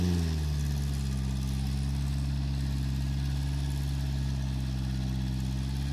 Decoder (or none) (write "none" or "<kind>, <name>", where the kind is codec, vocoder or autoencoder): none